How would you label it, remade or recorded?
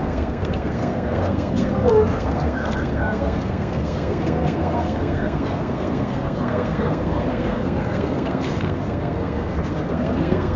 remade